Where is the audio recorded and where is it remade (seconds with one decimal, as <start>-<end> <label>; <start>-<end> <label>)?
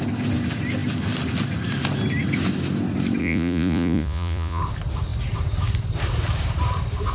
0.0-3.2 recorded; 3.2-4.6 remade; 4.6-7.1 recorded